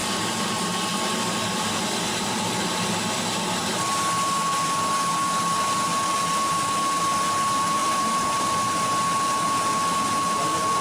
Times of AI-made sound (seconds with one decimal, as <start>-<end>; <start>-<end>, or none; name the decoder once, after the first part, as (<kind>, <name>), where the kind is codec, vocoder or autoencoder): 7.8-8.5 (vocoder, BigVGAN v2)